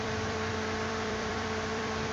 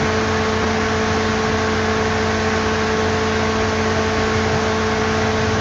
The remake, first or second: first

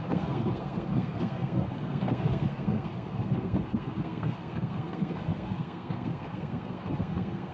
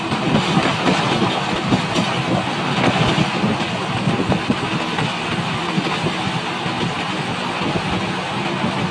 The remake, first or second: first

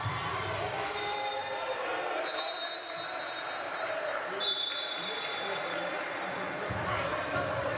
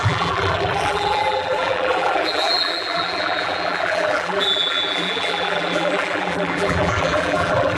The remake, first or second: second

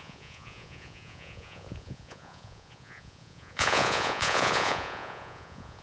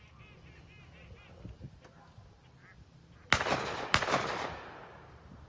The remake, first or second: first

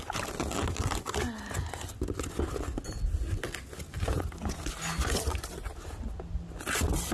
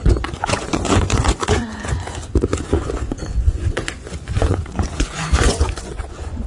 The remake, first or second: second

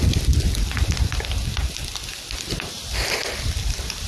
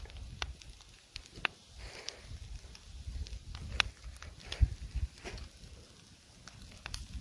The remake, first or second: first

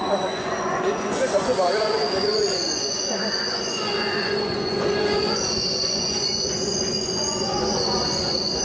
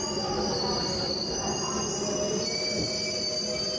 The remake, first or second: first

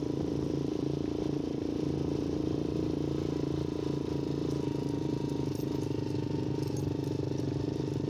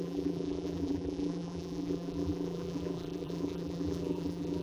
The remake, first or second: second